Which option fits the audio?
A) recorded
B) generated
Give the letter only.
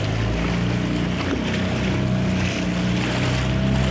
A